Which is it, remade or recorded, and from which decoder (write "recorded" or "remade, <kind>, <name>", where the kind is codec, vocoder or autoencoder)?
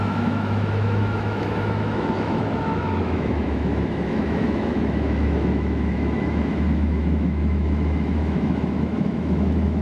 remade, autoencoder, DAC-VAE